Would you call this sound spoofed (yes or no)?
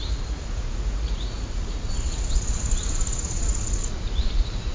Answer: yes